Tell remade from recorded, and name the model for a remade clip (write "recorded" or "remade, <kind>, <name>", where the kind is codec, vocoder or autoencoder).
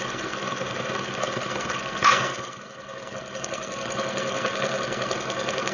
remade, codec, SNAC